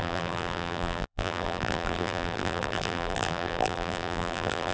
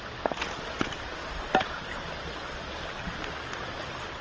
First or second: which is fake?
first